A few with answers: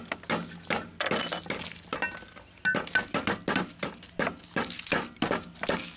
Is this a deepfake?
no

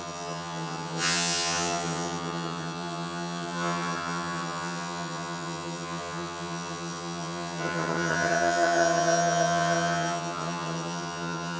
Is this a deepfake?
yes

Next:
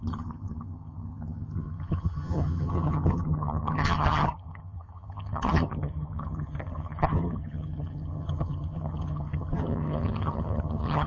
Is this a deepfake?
yes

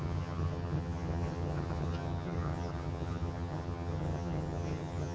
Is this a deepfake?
yes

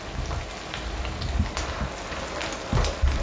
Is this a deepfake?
no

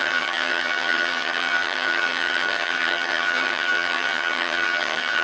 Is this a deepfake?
yes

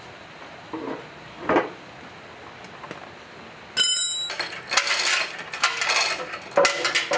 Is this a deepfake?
no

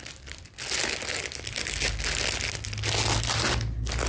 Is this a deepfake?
no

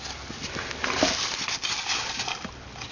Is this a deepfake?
no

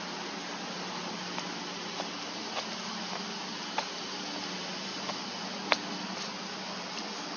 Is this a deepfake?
no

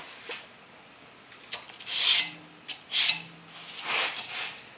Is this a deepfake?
no